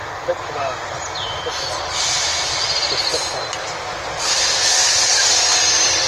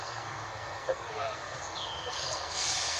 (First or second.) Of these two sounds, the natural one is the first